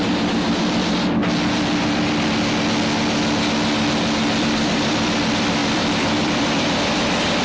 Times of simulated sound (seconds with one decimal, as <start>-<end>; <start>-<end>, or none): 0.0-1.2; 4.4-7.4